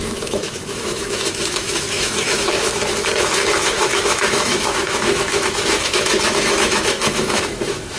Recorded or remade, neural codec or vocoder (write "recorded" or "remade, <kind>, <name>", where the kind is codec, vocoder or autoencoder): remade, autoencoder, DAC-VAE